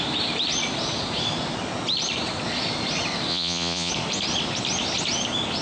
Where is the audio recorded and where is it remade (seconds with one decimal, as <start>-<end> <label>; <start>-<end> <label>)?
0.0-3.3 recorded; 3.3-3.9 remade; 3.9-5.6 recorded